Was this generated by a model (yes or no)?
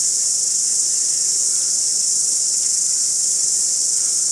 no